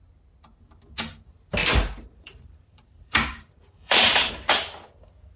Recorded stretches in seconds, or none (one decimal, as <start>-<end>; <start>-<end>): 0.0-1.6; 4.3-5.4